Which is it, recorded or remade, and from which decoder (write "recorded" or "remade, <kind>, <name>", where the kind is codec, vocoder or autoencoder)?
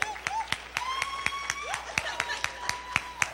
recorded